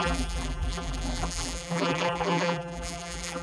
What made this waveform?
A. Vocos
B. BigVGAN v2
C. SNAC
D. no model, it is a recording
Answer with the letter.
B